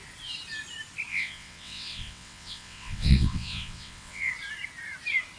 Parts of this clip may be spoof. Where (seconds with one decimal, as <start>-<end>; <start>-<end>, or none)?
1.1-4.3